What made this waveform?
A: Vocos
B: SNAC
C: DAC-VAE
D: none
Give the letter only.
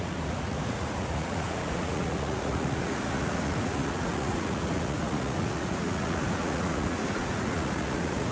A